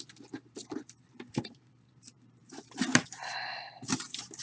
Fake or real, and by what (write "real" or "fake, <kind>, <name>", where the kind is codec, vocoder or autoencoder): fake, vocoder, BigVGAN v2